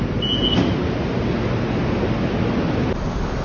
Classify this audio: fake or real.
real